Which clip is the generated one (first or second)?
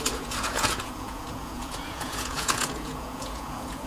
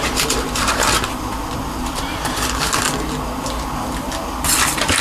first